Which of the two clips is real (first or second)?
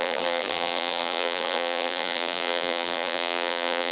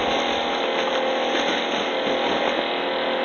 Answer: second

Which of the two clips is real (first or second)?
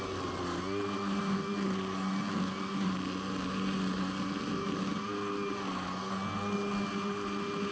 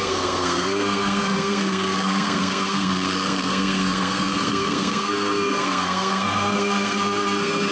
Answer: first